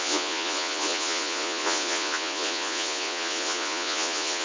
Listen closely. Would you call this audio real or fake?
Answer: fake